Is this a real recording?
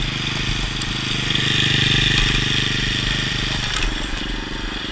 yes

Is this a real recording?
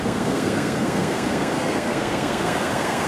no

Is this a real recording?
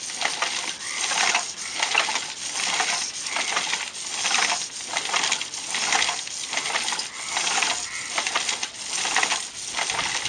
yes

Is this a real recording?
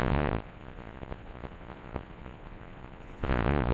no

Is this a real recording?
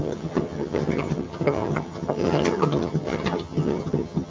no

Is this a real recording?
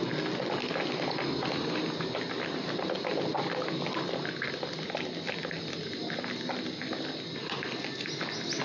yes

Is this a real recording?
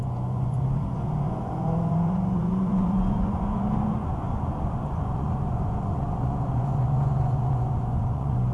no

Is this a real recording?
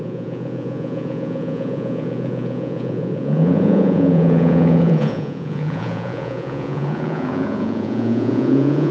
no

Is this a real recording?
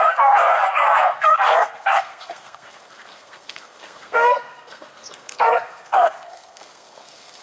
no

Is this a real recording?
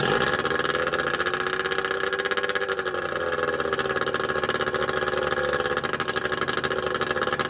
yes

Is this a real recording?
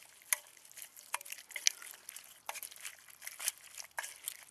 yes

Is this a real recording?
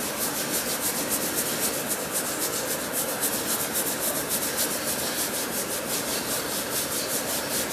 yes